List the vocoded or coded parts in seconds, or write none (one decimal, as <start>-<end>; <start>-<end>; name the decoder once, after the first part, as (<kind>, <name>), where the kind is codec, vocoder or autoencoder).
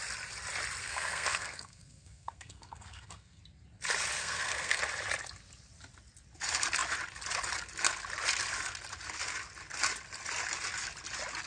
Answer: 0.8-3.4 (codec, SNAC); 4.2-4.8